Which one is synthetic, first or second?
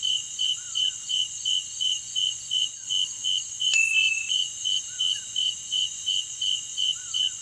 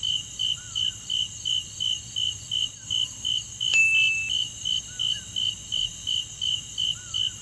first